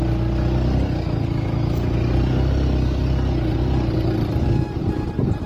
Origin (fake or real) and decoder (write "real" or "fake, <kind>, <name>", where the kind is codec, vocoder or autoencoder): real